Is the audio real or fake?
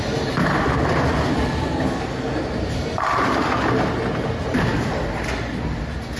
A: real